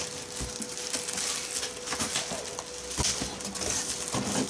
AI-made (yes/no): no